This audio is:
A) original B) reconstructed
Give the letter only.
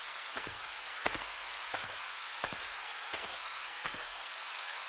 B